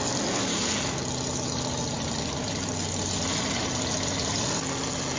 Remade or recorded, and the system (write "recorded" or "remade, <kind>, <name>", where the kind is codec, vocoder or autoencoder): recorded